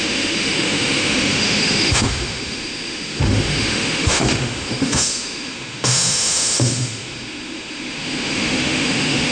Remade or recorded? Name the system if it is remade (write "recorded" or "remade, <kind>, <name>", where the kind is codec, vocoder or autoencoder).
remade, autoencoder, DAC-VAE